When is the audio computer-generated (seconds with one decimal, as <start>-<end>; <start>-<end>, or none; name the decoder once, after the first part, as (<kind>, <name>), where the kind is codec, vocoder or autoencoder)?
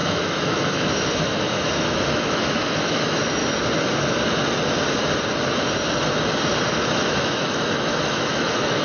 0.0-3.4 (autoencoder, DAC-VAE); 7.0-8.8